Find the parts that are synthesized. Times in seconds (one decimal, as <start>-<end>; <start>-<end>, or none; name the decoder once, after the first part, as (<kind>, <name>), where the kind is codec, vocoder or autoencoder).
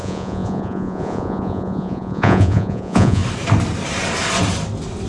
0.0-3.2 (vocoder, Vocos)